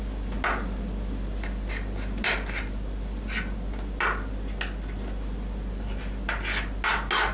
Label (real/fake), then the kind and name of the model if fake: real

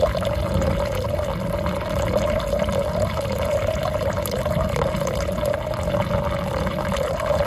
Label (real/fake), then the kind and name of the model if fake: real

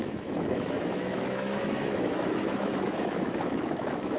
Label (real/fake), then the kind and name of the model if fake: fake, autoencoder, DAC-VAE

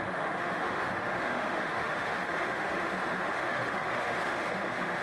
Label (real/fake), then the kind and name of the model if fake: fake, autoencoder, DAC-VAE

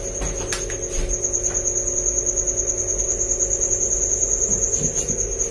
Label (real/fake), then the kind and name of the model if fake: real